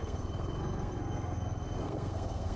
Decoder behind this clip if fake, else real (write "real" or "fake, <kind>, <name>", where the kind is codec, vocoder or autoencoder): fake, codec, SNAC